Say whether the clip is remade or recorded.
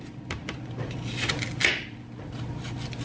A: recorded